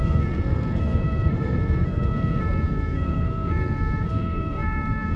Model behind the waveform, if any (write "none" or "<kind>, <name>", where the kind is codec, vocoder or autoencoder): codec, SNAC